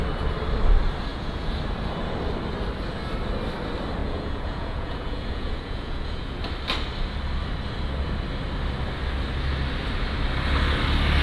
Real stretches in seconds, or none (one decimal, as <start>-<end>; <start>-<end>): 0.0-1.1; 1.6-4.0; 6.4-11.2